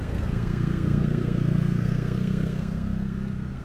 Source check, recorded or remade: remade